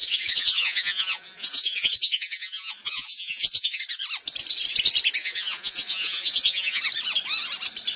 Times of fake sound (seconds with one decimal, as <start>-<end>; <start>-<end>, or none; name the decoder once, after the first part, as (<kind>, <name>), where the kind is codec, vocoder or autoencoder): 0.0-3.8 (vocoder, Vocos); 5.2-6.8